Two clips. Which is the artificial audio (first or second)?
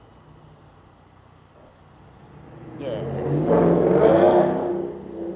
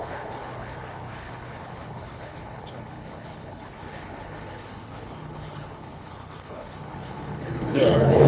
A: second